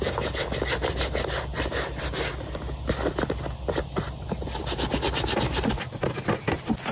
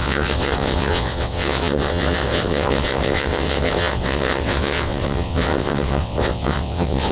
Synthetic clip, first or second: second